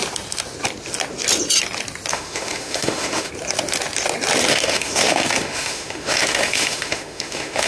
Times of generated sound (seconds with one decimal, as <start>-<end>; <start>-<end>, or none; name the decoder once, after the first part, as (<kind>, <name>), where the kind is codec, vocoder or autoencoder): 2.1-3.3 (autoencoder, DAC-VAE); 4.5-7.7